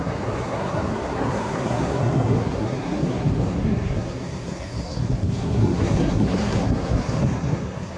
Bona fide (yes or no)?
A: no